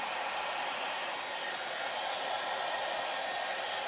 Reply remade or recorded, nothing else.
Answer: recorded